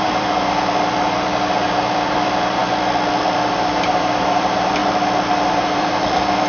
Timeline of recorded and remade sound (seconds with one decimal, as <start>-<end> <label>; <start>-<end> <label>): 0.0-6.5 remade

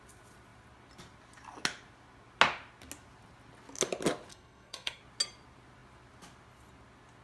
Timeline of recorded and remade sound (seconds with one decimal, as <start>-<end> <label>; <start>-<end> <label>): 0.0-4.3 recorded; 4.3-5.0 remade; 5.0-7.2 recorded